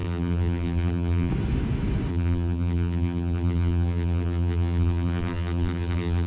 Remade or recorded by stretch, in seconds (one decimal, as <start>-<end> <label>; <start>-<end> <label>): 0.0-1.3 remade; 1.3-2.1 recorded; 2.1-6.3 remade